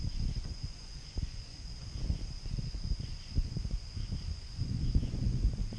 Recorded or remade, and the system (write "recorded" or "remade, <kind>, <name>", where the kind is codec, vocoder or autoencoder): remade, vocoder, Vocos